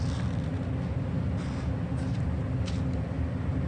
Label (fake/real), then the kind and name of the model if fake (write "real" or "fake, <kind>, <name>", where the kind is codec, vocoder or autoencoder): real